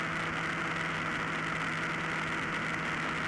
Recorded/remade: recorded